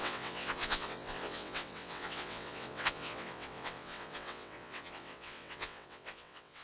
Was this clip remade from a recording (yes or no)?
yes